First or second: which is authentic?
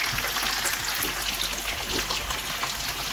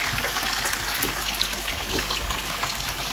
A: first